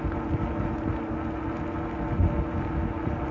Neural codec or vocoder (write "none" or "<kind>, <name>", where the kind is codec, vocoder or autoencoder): none